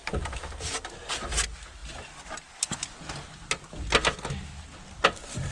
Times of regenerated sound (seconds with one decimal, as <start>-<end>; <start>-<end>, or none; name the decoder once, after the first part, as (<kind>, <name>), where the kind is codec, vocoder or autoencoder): none